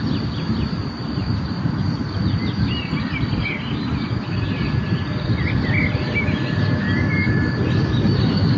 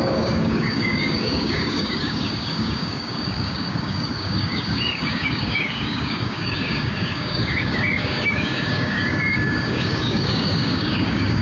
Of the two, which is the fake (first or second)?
second